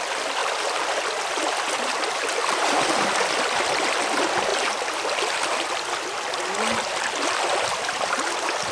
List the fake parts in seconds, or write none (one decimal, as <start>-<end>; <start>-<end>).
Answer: 0.4-0.9; 2.4-3.3; 4.5-6.4